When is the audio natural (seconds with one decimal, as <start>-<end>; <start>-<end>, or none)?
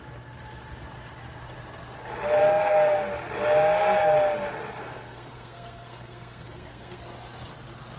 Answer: 0.0-2.4; 3.0-4.8; 7.0-8.0